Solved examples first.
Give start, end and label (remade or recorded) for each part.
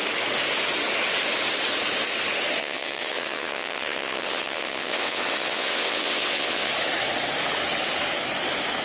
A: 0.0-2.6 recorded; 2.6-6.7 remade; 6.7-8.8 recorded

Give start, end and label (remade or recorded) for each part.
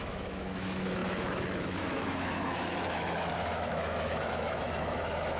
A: 0.0-5.4 remade